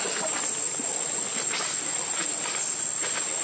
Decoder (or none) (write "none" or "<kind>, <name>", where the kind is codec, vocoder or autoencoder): none